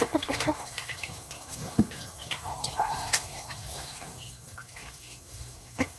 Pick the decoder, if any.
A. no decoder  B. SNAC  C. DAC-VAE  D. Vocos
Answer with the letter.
B